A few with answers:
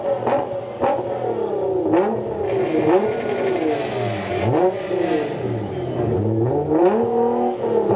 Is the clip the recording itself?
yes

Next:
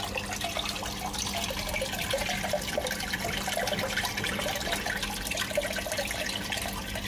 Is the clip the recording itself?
yes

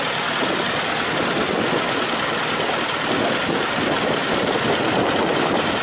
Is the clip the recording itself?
yes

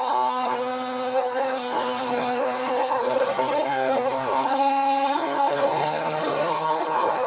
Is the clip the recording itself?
no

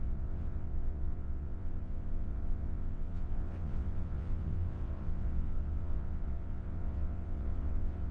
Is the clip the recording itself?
no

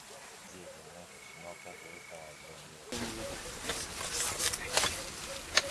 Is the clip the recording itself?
yes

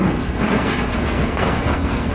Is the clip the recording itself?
no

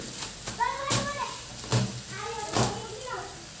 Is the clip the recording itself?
yes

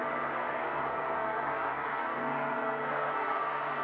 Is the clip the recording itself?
no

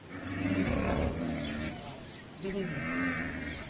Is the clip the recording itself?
yes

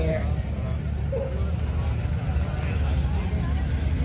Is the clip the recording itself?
yes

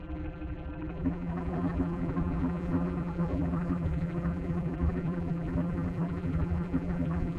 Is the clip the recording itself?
no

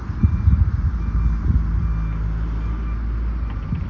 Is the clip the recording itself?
yes